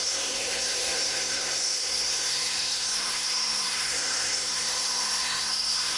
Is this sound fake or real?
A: fake